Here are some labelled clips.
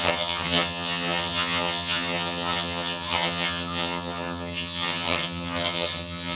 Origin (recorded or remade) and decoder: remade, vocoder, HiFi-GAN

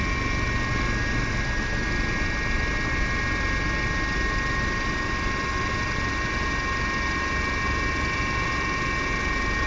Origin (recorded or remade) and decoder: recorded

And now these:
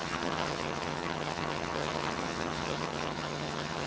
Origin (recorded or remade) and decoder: remade, vocoder, HiFi-GAN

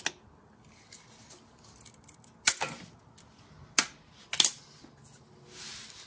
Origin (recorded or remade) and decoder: recorded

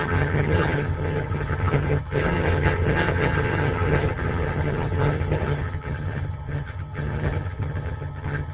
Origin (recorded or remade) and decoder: remade, vocoder, HiFi-GAN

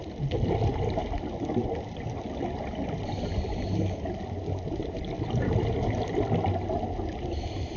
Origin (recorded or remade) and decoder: recorded